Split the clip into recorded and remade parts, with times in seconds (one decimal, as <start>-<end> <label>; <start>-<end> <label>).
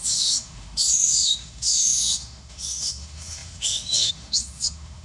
0.0-5.0 remade